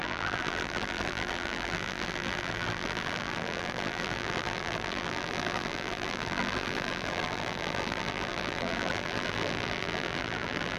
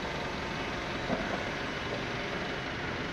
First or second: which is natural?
second